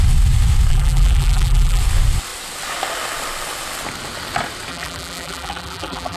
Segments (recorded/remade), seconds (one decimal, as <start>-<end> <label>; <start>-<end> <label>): 0.0-0.7 recorded; 0.7-1.8 remade; 1.8-4.7 recorded; 4.7-6.2 remade